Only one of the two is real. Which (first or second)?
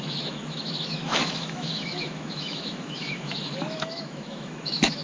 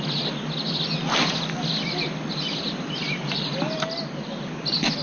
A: second